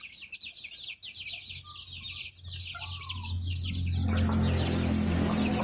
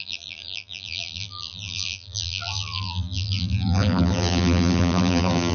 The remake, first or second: second